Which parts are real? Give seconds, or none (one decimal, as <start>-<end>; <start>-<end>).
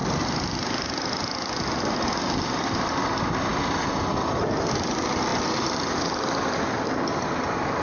0.0-7.8